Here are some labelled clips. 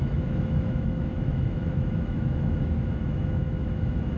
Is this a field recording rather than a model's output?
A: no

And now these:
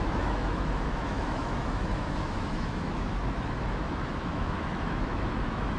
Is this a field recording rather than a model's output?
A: no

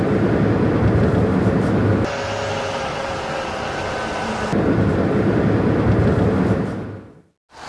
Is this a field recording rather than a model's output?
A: yes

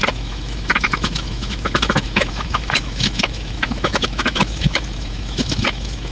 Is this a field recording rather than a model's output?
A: no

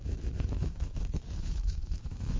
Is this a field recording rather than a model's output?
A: no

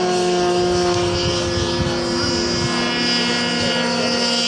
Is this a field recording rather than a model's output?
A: yes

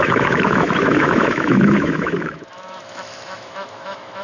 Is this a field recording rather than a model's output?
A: no